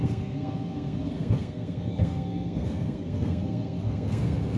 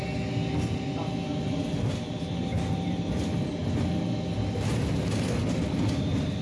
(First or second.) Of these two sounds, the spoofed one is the first